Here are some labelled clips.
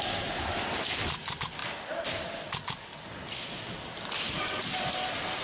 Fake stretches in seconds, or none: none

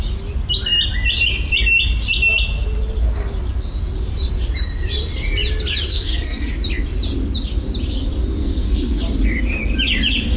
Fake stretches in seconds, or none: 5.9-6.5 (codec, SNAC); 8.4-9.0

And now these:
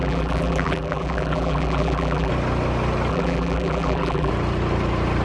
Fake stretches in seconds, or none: 0.0-2.3 (vocoder, BigVGAN v2); 3.1-4.3

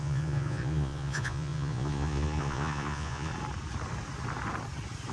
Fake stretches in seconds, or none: 0.0-3.3 (vocoder, Vocos)

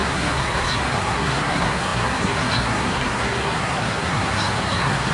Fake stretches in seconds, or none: 0.0-5.1 (codec, SNAC)